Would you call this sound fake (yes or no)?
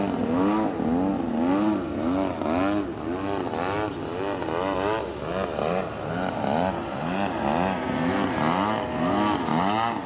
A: no